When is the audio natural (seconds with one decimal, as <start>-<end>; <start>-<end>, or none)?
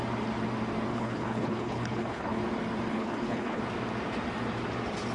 0.0-0.9; 2.4-2.9; 3.6-5.1